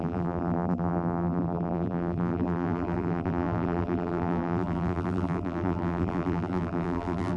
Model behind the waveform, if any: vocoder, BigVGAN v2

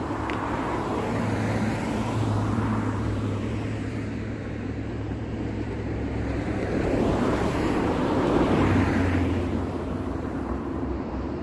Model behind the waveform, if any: vocoder, BigVGAN v2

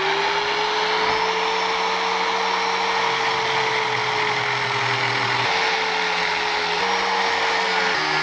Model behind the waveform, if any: none